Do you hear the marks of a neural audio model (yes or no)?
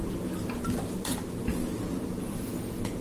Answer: no